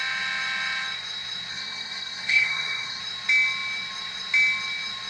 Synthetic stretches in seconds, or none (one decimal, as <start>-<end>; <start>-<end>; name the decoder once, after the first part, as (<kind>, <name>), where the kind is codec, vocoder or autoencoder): 1.5-3.0 (codec, SNAC)